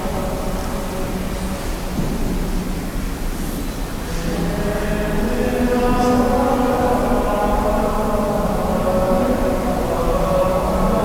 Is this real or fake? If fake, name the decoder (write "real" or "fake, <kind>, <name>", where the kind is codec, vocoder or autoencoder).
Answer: real